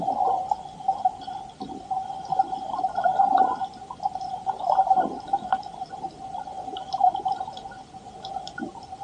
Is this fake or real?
real